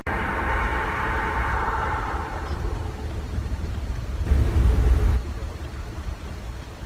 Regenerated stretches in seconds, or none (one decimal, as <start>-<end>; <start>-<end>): 0.0-6.9